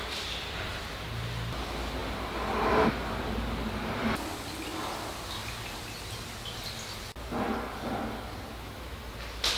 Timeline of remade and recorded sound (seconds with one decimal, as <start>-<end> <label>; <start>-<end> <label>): 0.0-8.5 recorded; 8.5-9.0 remade; 9.0-9.6 recorded